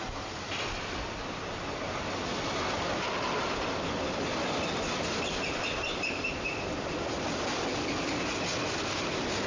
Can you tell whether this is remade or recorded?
recorded